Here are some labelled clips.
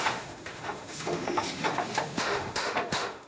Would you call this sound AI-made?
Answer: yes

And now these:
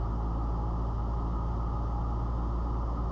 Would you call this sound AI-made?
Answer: no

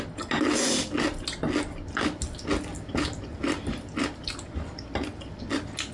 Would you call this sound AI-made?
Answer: no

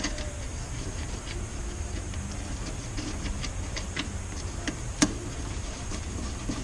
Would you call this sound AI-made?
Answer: yes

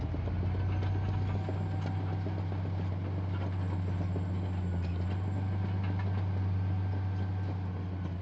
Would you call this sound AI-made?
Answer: no